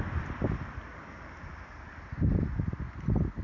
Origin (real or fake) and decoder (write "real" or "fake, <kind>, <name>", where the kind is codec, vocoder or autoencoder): real